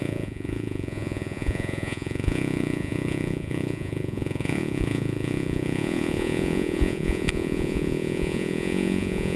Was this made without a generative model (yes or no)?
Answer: no